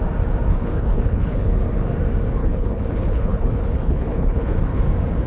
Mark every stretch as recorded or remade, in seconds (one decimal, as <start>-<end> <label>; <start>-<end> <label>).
0.0-0.5 recorded; 0.5-1.5 remade; 1.5-2.4 recorded; 2.4-4.8 remade; 4.8-5.3 recorded